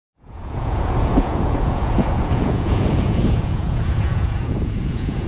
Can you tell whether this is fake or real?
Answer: fake